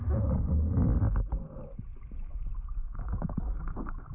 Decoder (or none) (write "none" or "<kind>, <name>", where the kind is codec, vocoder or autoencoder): none